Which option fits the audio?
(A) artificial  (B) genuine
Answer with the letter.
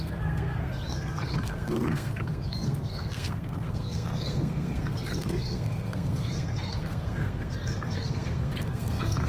A